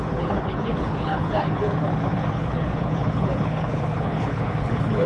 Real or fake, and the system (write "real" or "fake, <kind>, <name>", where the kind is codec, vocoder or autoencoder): fake, codec, HILCodec